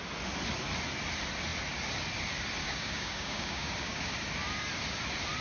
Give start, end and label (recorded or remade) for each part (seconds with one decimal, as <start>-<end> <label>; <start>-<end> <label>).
0.0-2.6 recorded; 2.6-4.1 remade; 4.1-5.4 recorded